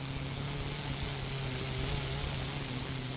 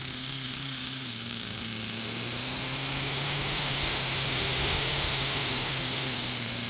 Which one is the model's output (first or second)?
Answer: second